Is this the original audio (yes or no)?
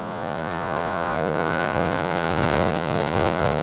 no